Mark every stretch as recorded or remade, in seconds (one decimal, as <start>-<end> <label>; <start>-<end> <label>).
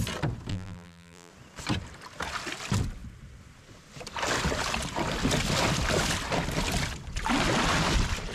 0.0-0.5 recorded; 0.5-1.3 remade; 1.3-8.3 recorded